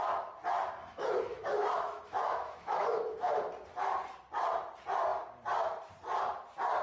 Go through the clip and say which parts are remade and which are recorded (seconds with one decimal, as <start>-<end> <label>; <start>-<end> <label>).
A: 0.0-0.8 recorded; 0.8-3.4 remade; 3.4-6.8 recorded